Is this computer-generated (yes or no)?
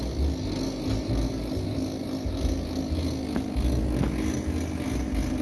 no